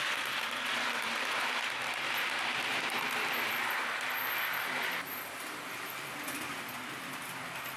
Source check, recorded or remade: remade